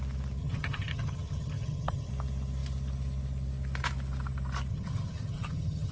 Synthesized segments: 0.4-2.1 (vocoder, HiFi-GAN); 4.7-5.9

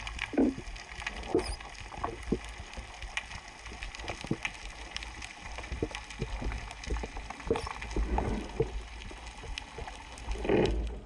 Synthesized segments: none

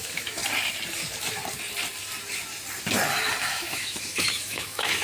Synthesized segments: 0.0-0.4 (autoencoder, DAC-VAE); 3.4-5.0

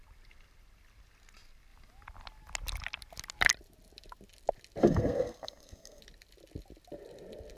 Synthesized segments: 4.8-6.0 (codec, SNAC)

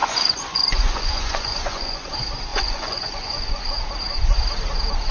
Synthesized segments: 0.0-2.1 (vocoder, Vocos); 2.5-3.6

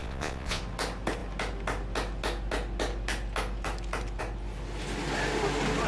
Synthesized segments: 0.0-0.6 (vocoder, Vocos)

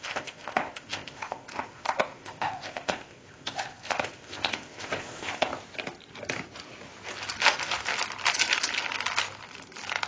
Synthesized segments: 0.0-5.5 (codec, ZipCodec)

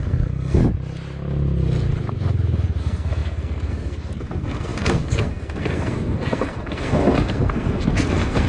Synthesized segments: 0.0-0.6 (codec, SNAC); 2.8-8.5